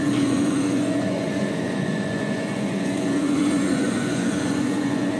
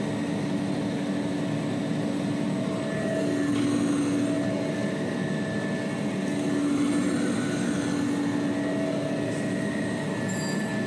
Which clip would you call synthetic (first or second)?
first